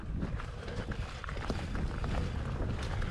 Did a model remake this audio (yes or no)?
no